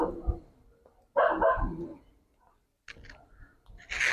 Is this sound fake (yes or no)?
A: no